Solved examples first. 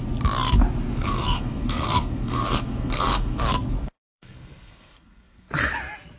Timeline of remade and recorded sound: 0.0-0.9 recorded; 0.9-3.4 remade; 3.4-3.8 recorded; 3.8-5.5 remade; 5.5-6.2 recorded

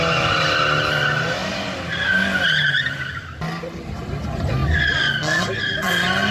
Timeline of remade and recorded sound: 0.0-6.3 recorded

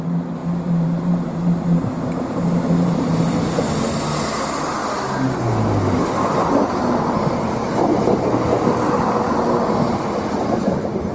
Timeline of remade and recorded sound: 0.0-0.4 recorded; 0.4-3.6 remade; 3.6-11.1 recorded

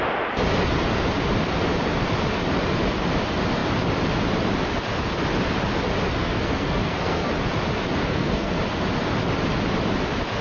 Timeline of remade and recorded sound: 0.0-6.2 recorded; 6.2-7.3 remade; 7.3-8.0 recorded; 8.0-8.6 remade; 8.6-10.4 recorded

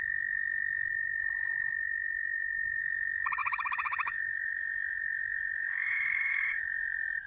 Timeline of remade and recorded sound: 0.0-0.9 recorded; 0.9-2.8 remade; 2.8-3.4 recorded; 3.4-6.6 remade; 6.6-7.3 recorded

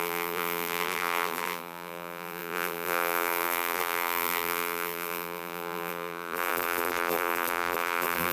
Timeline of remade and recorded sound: 0.0-8.3 remade